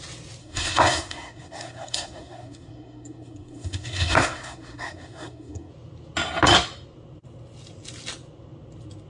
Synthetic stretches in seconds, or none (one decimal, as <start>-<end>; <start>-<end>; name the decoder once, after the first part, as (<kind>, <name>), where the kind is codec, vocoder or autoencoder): 0.4-5.7 (codec, SNAC)